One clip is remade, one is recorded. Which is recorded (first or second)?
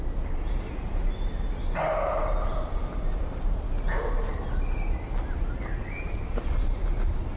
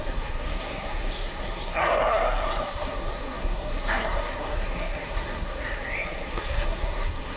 first